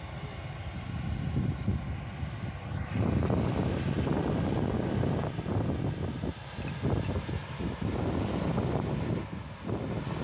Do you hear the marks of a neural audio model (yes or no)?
no